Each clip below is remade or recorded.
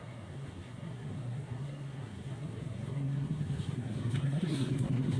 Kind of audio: remade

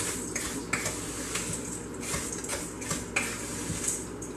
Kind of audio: recorded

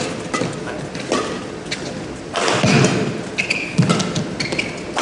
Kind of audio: recorded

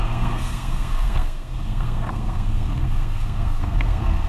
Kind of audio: remade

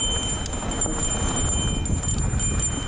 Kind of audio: recorded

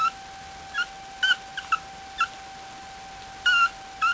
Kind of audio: recorded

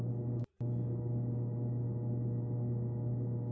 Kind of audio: recorded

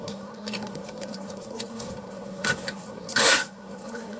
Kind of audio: remade